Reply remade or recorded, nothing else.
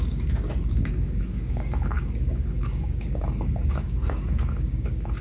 remade